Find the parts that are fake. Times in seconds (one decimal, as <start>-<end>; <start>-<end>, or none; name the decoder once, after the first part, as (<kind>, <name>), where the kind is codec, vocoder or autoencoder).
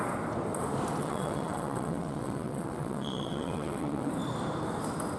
1.0-4.1 (vocoder, WaveNeXt)